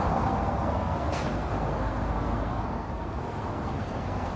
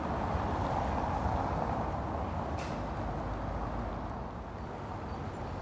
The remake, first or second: first